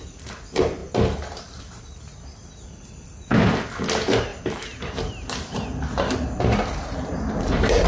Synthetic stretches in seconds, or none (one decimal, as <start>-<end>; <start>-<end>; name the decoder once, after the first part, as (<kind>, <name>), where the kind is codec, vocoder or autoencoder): 0.8-3.5 (vocoder, BigVGAN v2); 4.3-7.9

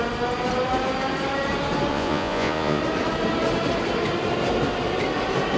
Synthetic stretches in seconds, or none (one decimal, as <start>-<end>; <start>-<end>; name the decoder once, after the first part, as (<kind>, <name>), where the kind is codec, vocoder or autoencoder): 1.9-2.8 (vocoder, Vocos)

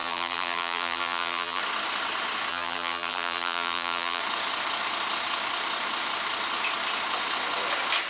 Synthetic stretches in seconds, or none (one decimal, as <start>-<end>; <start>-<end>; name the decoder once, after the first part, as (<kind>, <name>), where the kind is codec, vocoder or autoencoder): 0.0-1.6 (vocoder, BigVGAN v2); 2.5-4.2

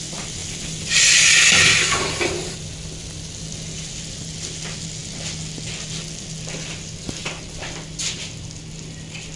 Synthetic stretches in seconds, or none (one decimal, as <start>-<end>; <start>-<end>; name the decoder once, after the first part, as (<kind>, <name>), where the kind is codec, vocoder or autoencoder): none

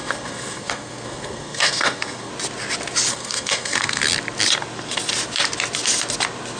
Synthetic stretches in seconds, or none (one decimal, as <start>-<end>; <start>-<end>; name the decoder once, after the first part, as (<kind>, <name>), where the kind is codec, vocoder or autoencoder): 0.0-2.3 (codec, SNAC); 3.1-4.0

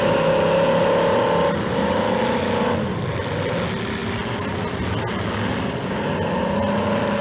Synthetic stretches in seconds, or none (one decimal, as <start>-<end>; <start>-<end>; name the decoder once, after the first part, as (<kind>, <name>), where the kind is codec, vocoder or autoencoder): none

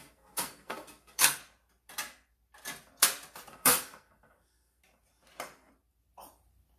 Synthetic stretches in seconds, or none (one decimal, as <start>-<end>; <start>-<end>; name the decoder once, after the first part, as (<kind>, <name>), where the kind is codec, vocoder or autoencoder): 0.0-1.4 (codec, SNAC); 3.5-4.8

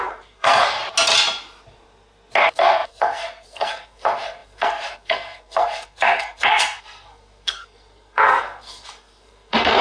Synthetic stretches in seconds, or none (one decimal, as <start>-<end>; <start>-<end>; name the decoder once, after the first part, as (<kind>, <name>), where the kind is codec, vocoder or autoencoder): 0.0-0.8 (codec, SNAC); 2.4-9.8